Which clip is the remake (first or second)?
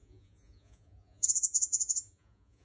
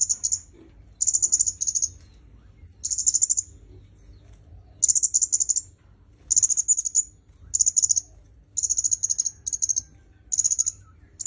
first